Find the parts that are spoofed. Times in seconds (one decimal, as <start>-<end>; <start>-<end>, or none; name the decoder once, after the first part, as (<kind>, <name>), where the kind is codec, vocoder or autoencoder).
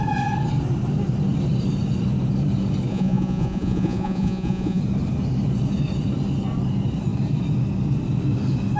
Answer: 2.9-4.8 (vocoder, Vocos)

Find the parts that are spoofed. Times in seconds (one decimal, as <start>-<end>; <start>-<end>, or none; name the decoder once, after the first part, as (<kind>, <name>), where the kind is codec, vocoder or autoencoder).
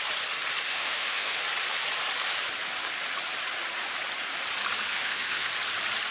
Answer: 0.7-1.4 (autoencoder, DAC-VAE); 4.9-5.5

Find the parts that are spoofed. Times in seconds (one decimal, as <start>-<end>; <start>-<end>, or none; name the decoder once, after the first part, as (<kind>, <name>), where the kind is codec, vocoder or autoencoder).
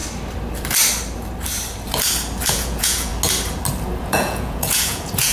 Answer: 2.5-3.1 (vocoder, Vocos); 4.0-5.3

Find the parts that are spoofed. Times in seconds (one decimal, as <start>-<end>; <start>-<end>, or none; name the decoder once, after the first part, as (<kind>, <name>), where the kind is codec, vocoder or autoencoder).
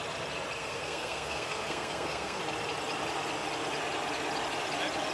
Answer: 0.6-2.4 (codec, SNAC)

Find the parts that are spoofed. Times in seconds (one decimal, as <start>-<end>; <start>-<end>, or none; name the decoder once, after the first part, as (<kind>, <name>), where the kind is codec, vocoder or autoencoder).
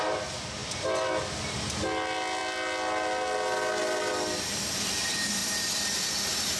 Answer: none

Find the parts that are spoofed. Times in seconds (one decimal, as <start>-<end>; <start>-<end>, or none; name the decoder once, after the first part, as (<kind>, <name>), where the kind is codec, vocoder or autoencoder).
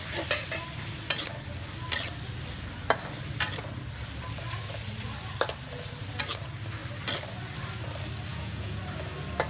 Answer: 8.3-8.8 (vocoder, Vocos)